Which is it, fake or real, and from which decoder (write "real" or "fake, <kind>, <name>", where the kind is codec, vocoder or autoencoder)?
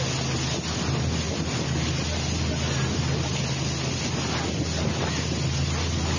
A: real